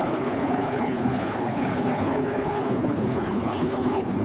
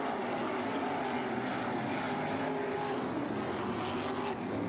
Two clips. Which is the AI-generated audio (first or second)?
first